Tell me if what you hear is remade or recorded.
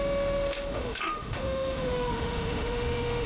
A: remade